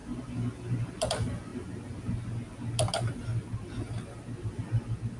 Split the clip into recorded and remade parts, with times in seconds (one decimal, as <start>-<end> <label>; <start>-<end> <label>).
0.0-5.2 recorded